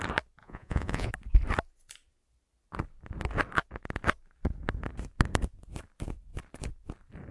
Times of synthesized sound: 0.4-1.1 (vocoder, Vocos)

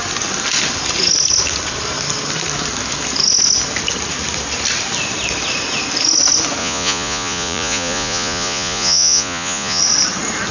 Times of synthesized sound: 6.6-9.8 (vocoder, Vocos)

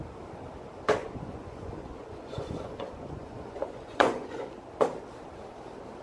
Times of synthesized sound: 1.0-4.6 (vocoder, Vocos)

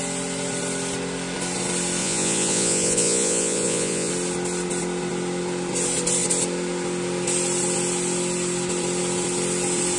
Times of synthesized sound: 2.0-4.1 (vocoder, Vocos)

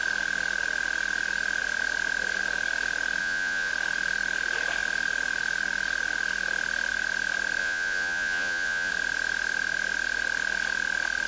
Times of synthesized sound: 3.2-3.7 (vocoder, Vocos); 7.6-8.9